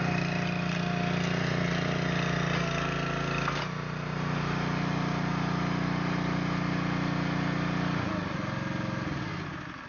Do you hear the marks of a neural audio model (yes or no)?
no